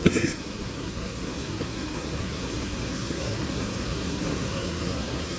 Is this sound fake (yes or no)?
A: yes